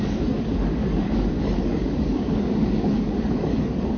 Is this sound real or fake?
fake